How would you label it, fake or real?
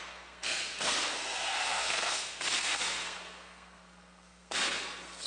fake